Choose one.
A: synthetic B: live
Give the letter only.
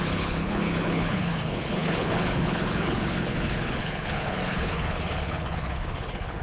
A